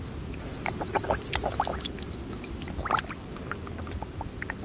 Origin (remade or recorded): recorded